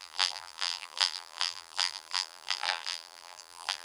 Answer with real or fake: fake